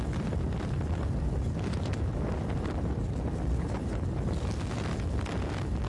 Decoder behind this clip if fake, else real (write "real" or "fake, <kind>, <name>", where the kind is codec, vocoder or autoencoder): real